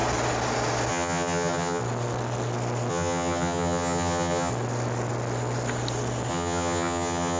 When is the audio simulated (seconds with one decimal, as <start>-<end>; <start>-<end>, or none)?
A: 0.9-1.8; 2.9-4.5; 6.3-7.4

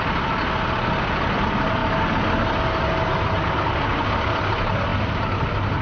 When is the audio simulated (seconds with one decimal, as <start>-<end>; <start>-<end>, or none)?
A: none

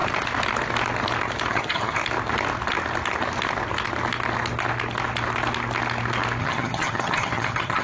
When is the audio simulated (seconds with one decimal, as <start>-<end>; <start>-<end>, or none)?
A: 1.5-2.0; 6.4-7.8

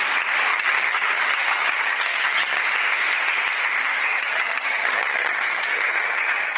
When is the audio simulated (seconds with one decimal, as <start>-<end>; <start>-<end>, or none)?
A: 0.5-2.6; 3.9-6.6

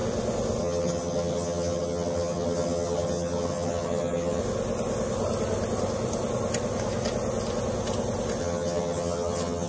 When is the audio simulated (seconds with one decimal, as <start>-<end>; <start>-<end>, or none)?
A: 0.6-4.4; 8.4-9.7